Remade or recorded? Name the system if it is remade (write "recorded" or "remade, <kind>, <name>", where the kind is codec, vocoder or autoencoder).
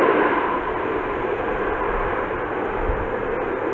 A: recorded